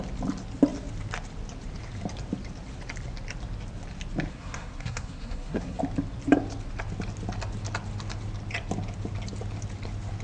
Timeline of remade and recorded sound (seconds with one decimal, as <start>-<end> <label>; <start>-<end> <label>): 0.0-4.3 recorded; 4.3-5.8 remade; 5.8-10.2 recorded